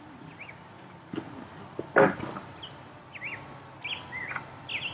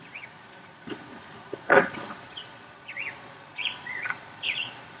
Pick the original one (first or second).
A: first